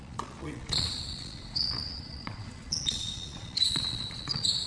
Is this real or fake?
fake